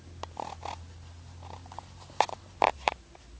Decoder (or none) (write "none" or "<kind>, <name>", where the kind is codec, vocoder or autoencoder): none